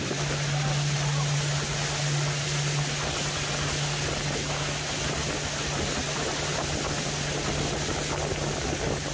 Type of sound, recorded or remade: recorded